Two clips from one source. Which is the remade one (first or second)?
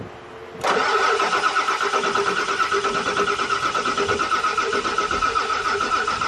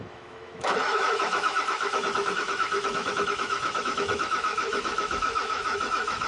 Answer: second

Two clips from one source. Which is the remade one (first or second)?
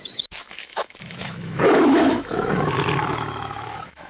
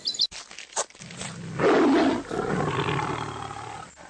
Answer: first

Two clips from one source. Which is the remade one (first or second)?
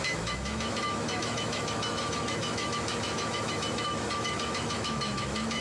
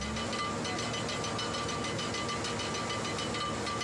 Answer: first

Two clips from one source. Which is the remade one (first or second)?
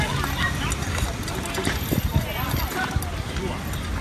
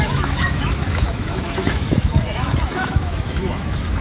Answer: second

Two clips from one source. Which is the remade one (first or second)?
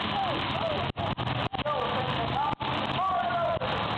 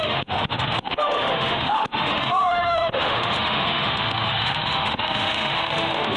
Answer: second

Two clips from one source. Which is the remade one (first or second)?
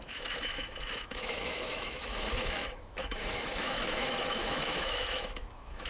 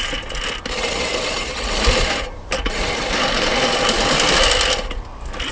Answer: first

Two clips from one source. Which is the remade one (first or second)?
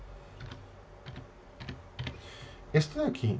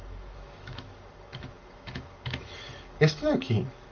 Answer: second